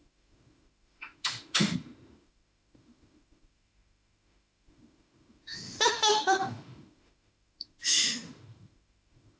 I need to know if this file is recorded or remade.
remade